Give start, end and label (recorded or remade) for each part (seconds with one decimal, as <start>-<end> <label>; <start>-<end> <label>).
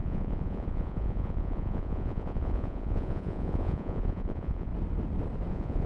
0.0-4.7 remade; 4.7-5.5 recorded; 5.5-5.9 remade